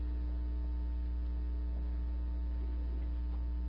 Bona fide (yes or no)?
yes